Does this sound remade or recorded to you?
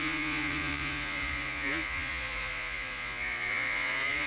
remade